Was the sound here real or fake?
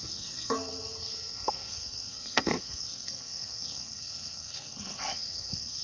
fake